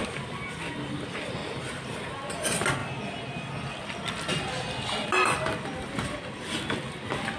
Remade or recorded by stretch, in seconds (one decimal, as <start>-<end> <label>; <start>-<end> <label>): 0.0-7.4 recorded